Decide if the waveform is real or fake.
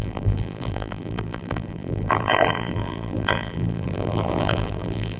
fake